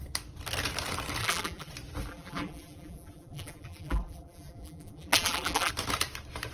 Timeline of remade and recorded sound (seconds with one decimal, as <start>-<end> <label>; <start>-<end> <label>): 0.0-1.2 recorded; 1.2-1.7 remade; 1.7-2.1 recorded; 2.1-5.7 remade; 5.7-6.5 recorded